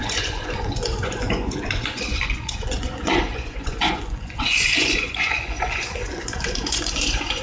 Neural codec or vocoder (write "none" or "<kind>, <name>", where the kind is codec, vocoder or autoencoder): vocoder, Vocos